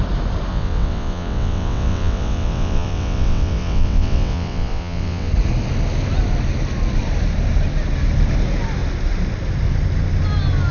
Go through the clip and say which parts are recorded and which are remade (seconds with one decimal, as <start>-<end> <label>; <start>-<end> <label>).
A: 0.0-0.5 recorded; 0.5-5.3 remade; 5.3-10.7 recorded